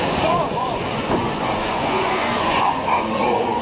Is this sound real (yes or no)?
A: no